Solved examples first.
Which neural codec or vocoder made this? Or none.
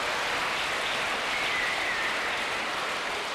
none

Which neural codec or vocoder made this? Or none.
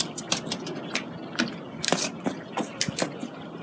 none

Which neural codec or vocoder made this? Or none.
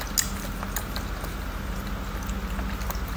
none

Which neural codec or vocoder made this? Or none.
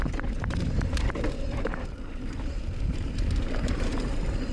vocoder, BigVGAN v2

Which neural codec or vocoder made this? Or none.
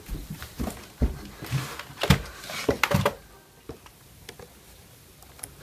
none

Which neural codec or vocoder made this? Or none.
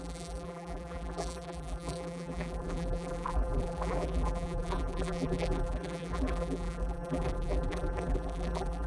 vocoder, BigVGAN v2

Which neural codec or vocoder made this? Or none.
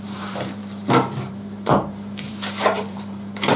vocoder, BigVGAN v2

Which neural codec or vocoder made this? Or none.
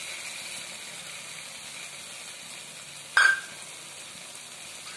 none